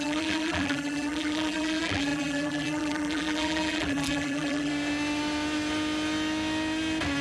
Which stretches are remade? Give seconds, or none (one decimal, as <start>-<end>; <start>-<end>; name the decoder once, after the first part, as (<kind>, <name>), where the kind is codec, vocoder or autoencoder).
0.0-4.7 (vocoder, BigVGAN v2)